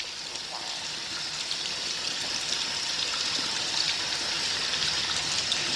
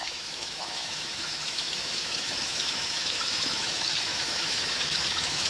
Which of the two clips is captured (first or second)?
first